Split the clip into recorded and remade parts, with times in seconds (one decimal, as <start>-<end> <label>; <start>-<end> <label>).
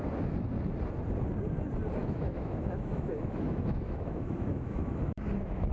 0.0-2.0 recorded; 2.0-5.7 remade